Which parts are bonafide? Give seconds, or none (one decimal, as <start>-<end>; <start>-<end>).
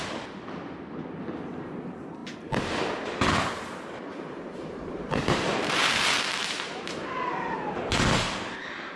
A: 0.0-4.1; 5.9-6.4; 7.5-9.0